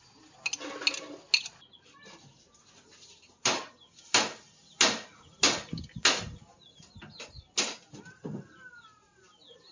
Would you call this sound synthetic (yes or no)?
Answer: no